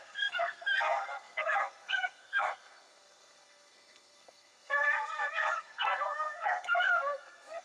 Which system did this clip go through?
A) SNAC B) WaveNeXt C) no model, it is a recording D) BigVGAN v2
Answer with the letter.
A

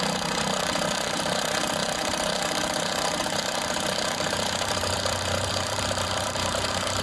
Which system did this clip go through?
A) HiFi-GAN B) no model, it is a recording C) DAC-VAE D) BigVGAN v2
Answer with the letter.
D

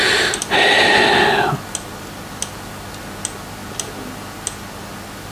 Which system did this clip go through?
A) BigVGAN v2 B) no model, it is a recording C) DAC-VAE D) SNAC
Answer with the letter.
B